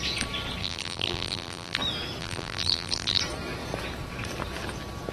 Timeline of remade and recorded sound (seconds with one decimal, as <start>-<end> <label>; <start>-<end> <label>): 0.0-0.6 recorded; 0.6-1.8 remade; 1.8-2.2 recorded; 2.2-3.2 remade; 3.2-5.1 recorded